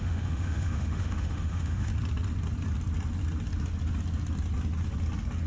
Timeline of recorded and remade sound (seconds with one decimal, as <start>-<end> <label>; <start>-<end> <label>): 0.0-1.9 remade; 1.9-5.5 recorded